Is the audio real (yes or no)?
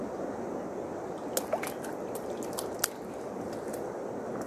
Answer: yes